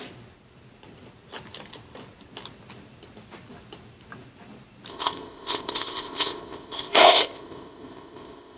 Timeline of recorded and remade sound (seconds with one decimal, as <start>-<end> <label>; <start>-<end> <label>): 0.0-4.9 recorded; 4.9-8.6 remade